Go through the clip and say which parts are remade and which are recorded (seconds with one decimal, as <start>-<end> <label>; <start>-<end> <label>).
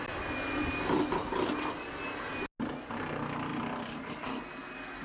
0.0-5.0 recorded